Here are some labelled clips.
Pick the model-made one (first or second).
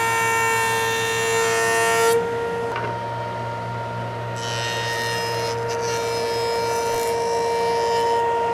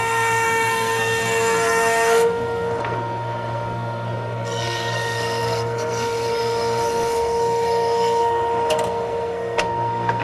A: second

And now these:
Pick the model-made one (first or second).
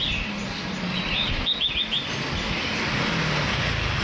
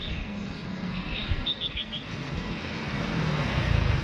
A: second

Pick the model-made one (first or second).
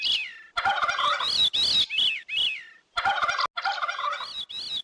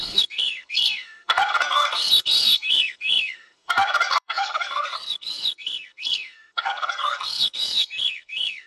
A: second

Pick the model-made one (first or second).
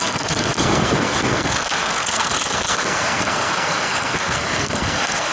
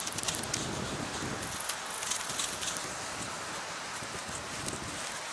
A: first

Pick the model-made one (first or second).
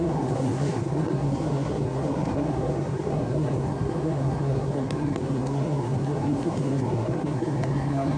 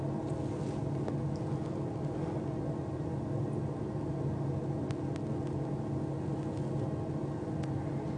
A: first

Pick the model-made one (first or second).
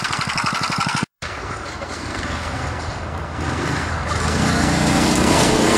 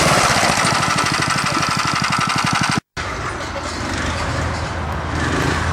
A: first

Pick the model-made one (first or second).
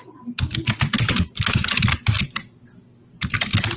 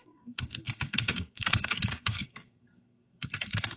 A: second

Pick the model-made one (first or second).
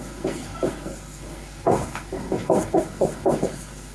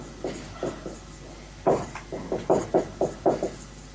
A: first